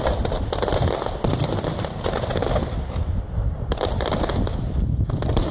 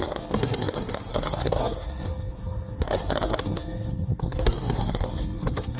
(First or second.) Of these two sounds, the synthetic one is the second